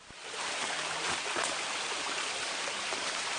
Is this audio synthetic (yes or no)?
yes